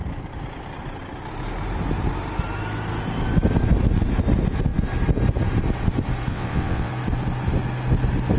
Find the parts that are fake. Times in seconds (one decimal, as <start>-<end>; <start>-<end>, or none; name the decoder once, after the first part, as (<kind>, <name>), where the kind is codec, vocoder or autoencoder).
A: 6.3-6.9 (vocoder, WaveNeXt)